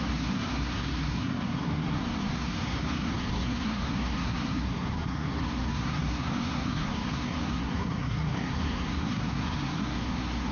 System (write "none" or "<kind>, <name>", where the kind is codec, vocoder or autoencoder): codec, SNAC